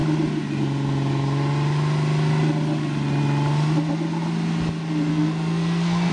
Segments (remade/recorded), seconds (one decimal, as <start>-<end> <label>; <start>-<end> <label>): 0.0-5.1 recorded; 5.1-6.1 remade